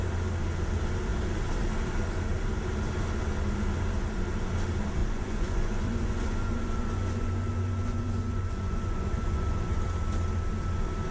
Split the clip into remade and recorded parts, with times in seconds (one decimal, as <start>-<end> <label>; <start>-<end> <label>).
0.0-5.0 recorded; 5.0-9.8 remade; 9.8-11.1 recorded